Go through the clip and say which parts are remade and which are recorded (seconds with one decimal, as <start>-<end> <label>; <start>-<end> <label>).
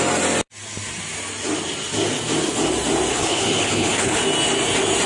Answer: 0.0-3.1 recorded; 3.1-4.2 remade; 4.2-5.1 recorded